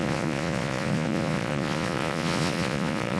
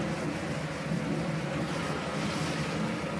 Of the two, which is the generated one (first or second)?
first